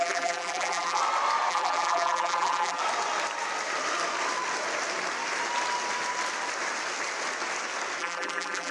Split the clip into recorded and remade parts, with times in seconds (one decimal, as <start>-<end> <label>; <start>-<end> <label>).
0.0-1.0 remade; 1.0-1.5 recorded; 1.5-2.8 remade; 2.8-8.0 recorded; 8.0-8.7 remade